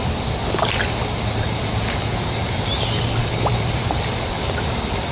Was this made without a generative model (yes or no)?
yes